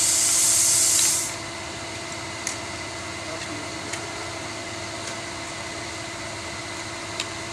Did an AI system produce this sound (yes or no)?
no